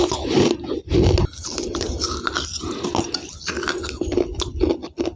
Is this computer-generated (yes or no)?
no